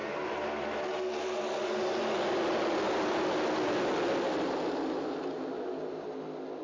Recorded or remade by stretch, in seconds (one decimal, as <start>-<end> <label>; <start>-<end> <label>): 0.0-6.6 recorded